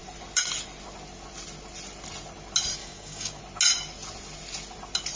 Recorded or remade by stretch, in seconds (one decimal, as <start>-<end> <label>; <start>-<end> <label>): 0.0-2.8 recorded; 2.8-3.4 remade; 3.4-5.2 recorded

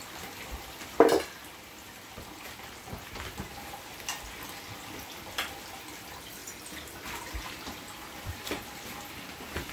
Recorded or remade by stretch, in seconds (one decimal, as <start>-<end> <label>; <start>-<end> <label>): 0.0-9.7 recorded

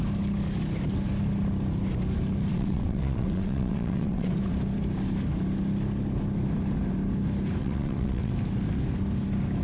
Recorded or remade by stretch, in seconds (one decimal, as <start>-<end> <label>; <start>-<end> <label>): 0.0-2.5 recorded; 2.5-4.3 remade; 4.3-7.6 recorded; 7.6-8.3 remade; 8.3-9.6 recorded

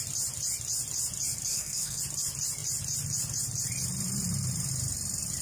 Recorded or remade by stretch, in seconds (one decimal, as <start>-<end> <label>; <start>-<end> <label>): 0.0-1.5 recorded; 1.5-2.0 remade; 2.0-5.4 recorded

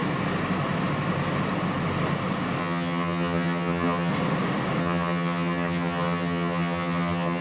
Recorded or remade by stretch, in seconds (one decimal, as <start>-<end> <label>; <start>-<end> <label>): 0.0-2.6 recorded; 2.6-4.1 remade; 4.1-4.8 recorded; 4.8-7.4 remade

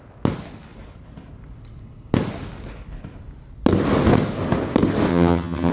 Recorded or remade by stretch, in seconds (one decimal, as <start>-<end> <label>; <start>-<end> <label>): 0.0-5.1 recorded; 5.1-5.7 remade

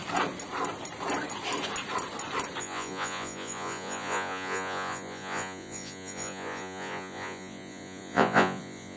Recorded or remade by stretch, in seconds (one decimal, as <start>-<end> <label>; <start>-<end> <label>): 0.0-2.6 recorded; 2.6-9.0 remade